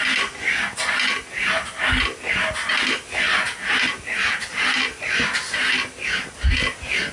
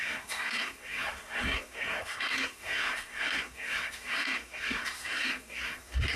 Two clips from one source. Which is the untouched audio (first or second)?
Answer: first